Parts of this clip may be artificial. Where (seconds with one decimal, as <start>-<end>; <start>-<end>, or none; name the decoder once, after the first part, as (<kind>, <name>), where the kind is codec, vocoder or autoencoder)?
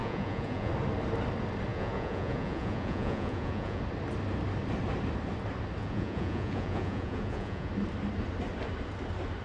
0.0-0.7 (vocoder, Vocos); 1.7-3.8; 5.8-7.7